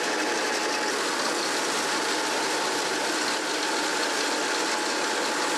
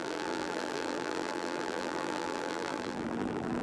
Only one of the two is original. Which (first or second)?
first